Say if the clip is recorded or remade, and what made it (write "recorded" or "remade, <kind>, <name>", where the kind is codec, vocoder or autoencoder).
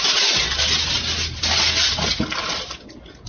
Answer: recorded